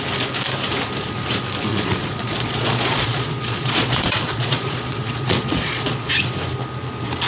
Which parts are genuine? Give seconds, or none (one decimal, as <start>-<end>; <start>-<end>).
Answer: 0.0-1.7; 6.1-7.3